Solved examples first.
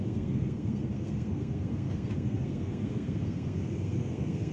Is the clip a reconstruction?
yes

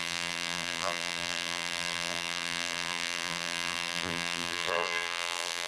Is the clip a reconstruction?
yes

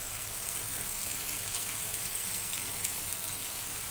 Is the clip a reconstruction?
yes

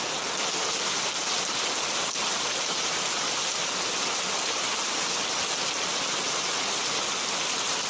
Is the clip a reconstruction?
no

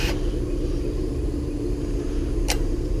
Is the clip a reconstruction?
yes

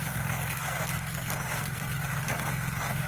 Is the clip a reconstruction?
yes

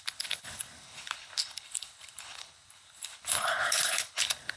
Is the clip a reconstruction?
yes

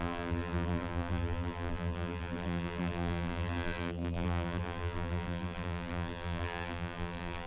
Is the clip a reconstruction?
yes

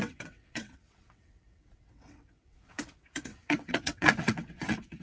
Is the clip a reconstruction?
yes